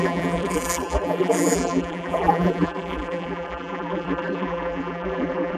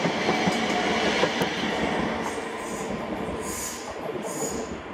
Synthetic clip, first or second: first